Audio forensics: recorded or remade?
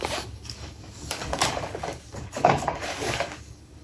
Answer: remade